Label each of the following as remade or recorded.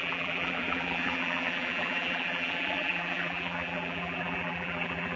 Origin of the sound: remade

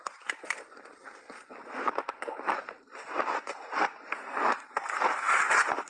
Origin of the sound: remade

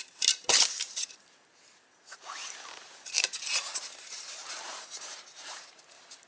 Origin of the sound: remade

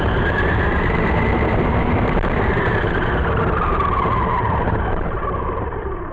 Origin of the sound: remade